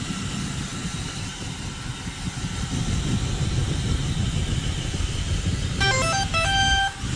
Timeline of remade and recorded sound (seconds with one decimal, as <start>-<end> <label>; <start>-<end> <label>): 0.0-7.2 recorded